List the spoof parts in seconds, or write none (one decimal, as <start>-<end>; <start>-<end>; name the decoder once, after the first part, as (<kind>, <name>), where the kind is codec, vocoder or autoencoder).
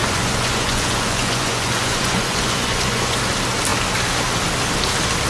0.0-3.2 (vocoder, Vocos)